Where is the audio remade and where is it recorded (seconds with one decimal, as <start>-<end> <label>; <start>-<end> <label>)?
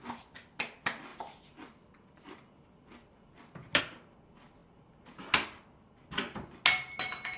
0.0-1.1 recorded; 1.1-3.8 remade; 3.8-7.4 recorded